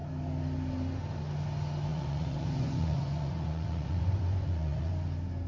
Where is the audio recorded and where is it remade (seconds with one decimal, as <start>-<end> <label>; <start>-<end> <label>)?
0.0-1.9 recorded; 1.9-4.9 remade; 4.9-5.5 recorded